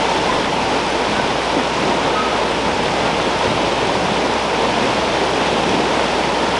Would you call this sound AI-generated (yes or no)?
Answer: no